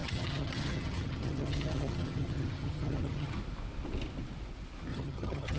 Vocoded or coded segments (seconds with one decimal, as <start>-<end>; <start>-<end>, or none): 0.0-3.4; 4.9-5.6